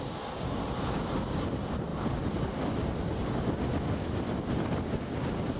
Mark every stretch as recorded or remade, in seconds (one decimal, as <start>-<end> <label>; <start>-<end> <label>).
0.0-5.6 recorded